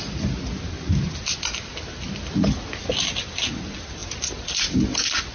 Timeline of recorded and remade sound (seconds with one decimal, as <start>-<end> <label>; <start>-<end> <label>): 0.0-5.3 recorded

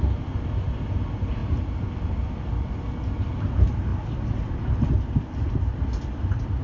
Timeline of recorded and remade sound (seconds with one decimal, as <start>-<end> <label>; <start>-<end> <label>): 0.0-6.6 recorded

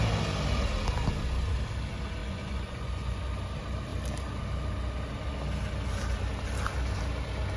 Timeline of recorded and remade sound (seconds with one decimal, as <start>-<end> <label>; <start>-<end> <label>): 0.0-2.2 recorded; 2.2-3.2 remade; 3.2-7.6 recorded

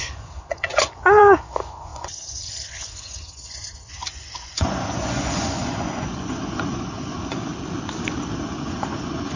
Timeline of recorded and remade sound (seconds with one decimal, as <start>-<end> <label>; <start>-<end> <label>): 0.0-7.5 remade; 7.5-8.4 recorded; 8.4-9.4 remade

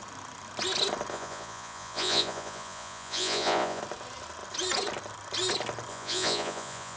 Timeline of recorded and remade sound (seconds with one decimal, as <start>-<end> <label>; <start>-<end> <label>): 0.0-1.1 recorded; 1.1-3.8 remade; 3.8-5.9 recorded; 5.9-7.0 remade

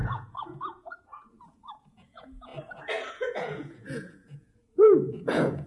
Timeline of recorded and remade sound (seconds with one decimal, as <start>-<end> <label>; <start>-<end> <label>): 0.0-2.5 remade; 2.5-3.1 recorded; 3.1-5.7 remade

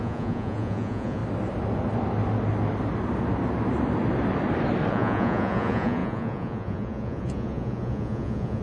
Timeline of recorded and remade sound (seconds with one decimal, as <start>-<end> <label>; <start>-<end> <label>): 0.0-1.2 remade; 1.2-4.9 recorded; 4.9-8.6 remade